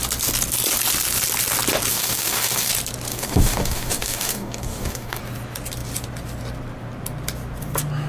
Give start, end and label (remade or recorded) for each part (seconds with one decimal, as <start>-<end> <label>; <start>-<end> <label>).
0.0-1.9 recorded; 1.9-2.7 remade; 2.7-3.1 recorded; 3.1-5.2 remade; 5.2-8.1 recorded